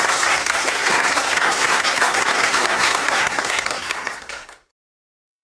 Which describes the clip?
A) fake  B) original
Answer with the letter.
A